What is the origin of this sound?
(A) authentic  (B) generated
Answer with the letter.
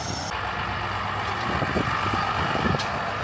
A